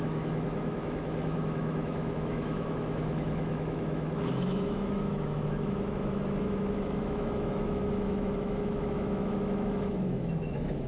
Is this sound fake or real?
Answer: fake